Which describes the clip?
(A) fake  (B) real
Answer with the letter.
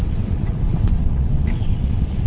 A